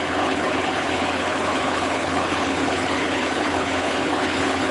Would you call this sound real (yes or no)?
no